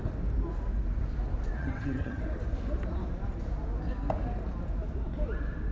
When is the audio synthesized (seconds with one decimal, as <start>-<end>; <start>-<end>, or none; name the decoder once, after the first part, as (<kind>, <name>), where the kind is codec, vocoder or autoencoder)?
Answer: 1.6-2.2 (vocoder, HiFi-GAN)